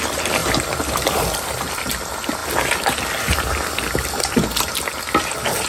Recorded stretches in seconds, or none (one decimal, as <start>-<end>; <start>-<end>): 0.0-5.7